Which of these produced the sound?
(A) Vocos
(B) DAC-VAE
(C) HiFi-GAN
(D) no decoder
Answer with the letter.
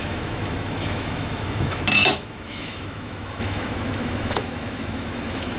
B